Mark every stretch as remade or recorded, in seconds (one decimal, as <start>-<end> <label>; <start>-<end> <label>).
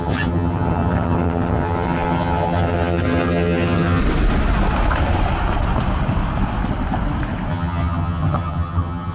0.0-4.0 remade; 4.0-7.5 recorded; 7.5-9.1 remade